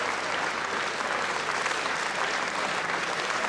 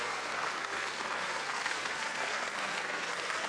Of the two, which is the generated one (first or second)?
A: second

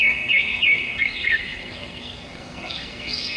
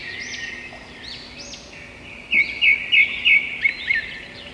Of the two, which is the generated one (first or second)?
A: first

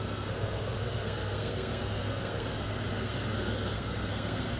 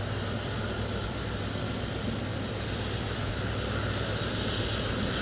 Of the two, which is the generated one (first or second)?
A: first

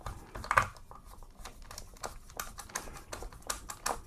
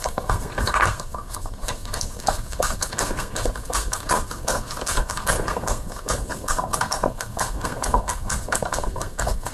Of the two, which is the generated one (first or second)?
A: second